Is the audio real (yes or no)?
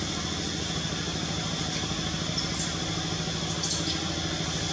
yes